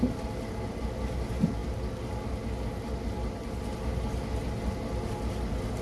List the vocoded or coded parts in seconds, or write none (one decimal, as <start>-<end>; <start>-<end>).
none